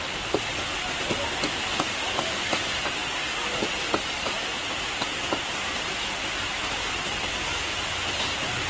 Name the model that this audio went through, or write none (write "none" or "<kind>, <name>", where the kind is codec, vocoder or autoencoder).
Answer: none